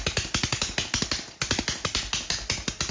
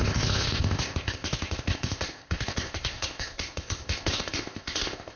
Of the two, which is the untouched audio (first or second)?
first